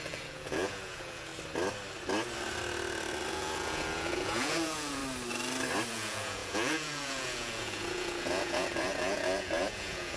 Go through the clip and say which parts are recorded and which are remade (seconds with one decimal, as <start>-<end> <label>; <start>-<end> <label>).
0.0-1.3 remade; 1.3-3.3 recorded; 3.3-5.0 remade; 5.0-5.9 recorded; 5.9-10.2 remade